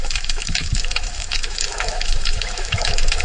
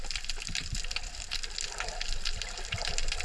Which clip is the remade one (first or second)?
first